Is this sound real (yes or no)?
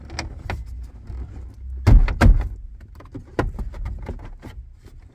yes